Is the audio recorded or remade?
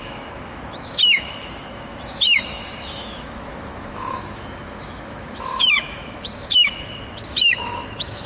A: remade